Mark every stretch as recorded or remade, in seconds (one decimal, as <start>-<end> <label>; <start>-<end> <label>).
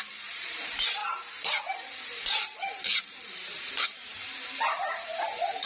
0.0-5.7 remade